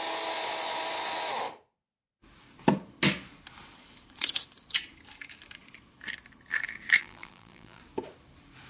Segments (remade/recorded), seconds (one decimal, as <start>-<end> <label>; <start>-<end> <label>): 0.0-7.0 recorded; 7.0-7.8 remade; 7.8-8.7 recorded